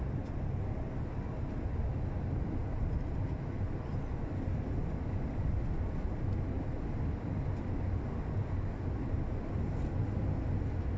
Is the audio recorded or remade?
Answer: recorded